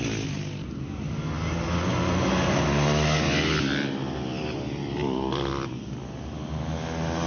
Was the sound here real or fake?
real